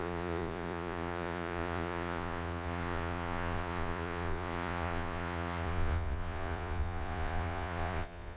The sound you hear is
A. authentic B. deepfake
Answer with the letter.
B